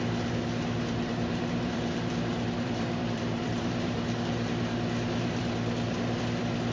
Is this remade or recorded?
remade